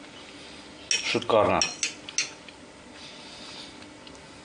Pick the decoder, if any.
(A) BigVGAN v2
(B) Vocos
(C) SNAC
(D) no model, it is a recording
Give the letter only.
D